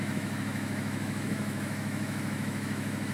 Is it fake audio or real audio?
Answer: fake